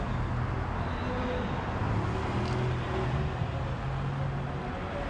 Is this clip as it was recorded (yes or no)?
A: yes